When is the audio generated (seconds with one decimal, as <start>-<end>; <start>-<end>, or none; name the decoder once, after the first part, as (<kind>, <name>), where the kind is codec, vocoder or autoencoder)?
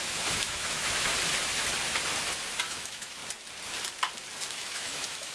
0.0-1.1 (autoencoder, DAC-VAE); 2.6-3.2; 4.5-5.3